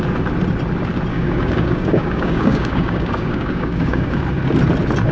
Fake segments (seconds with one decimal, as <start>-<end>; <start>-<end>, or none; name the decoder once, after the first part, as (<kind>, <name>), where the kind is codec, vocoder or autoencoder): 1.1-4.2 (codec, DAC)